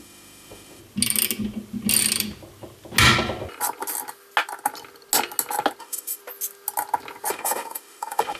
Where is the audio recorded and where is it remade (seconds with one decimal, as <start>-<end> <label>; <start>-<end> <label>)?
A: 0.0-0.8 remade; 0.8-5.8 recorded; 5.8-6.2 remade; 6.2-7.3 recorded; 7.3-8.4 remade